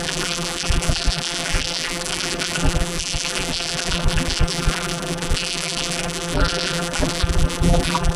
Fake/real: fake